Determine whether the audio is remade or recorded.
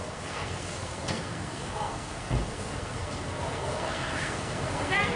remade